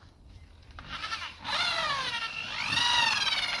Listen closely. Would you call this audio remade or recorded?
recorded